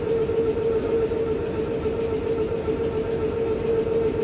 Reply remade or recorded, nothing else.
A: recorded